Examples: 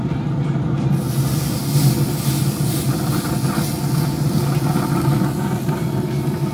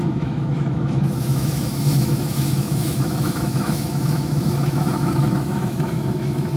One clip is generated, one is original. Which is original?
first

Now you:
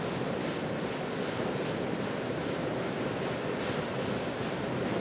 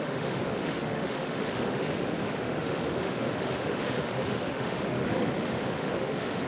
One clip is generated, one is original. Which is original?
first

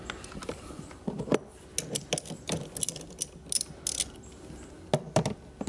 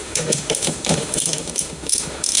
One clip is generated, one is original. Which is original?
first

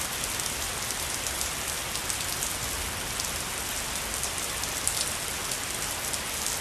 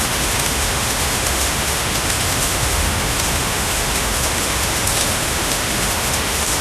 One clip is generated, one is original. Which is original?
first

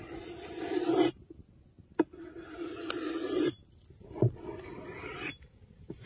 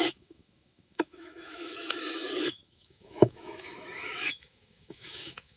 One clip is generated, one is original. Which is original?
first